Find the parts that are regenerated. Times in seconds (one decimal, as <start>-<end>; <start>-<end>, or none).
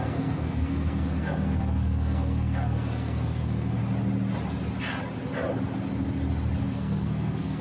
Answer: 0.0-3.8; 6.6-7.6